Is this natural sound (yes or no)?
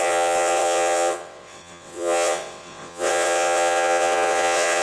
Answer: no